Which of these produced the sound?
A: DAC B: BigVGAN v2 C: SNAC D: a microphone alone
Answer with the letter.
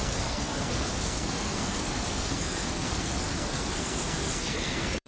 C